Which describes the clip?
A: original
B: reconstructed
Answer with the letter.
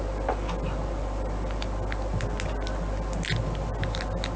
A